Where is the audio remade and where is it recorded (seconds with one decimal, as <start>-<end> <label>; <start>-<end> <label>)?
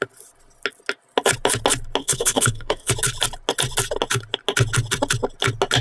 0.0-2.0 recorded; 2.0-2.9 remade; 2.9-5.8 recorded